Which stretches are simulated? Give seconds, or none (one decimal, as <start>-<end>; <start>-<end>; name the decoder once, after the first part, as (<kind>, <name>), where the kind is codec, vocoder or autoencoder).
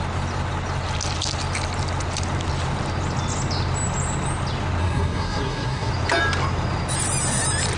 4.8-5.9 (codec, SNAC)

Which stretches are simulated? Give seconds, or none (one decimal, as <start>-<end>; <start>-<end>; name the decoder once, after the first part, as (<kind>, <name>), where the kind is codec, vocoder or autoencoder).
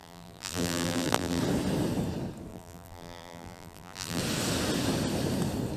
0.0-1.4 (vocoder, BigVGAN v2); 2.5-4.2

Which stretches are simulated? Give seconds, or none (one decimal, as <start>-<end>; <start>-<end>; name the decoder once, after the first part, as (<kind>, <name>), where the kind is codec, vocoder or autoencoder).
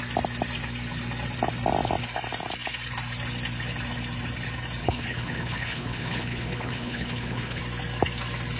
4.8-7.6 (codec, HILCodec)